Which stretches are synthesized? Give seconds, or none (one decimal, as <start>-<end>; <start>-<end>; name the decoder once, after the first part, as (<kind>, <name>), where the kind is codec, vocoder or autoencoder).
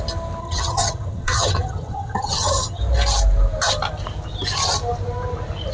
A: 0.4-2.8 (vocoder, HiFi-GAN)